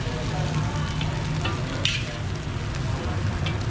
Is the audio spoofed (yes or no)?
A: no